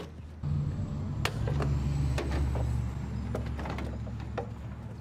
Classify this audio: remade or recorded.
recorded